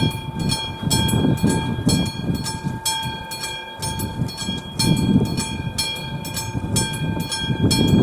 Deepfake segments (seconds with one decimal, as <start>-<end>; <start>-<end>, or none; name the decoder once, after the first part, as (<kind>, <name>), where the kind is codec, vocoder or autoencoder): none